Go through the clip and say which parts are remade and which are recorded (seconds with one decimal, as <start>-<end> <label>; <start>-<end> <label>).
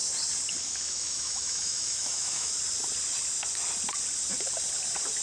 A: 0.0-0.6 recorded; 0.6-2.5 remade; 2.5-5.2 recorded